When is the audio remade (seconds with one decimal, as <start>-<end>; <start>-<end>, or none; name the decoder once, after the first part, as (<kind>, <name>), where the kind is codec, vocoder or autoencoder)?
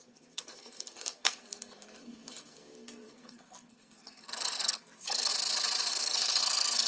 0.0-5.3 (codec, SNAC); 5.9-6.9